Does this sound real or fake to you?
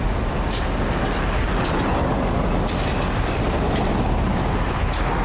real